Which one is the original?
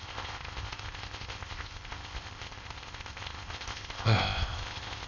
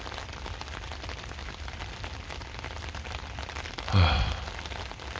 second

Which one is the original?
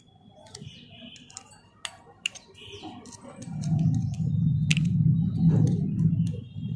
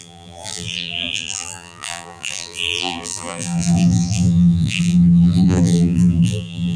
first